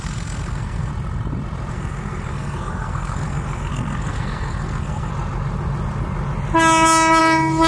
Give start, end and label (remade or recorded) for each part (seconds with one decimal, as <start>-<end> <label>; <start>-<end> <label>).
0.0-0.9 remade; 0.9-1.7 recorded; 1.7-5.1 remade; 5.1-7.2 recorded; 7.2-7.7 remade